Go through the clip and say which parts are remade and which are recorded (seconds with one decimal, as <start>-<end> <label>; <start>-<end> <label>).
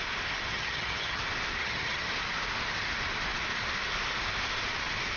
0.0-0.5 recorded; 0.5-1.2 remade; 1.2-1.6 recorded; 1.6-2.1 remade; 2.1-5.2 recorded